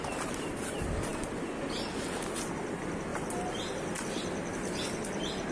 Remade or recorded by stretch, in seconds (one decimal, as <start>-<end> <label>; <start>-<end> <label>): 0.0-5.5 recorded